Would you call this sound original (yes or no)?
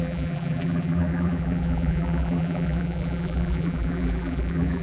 no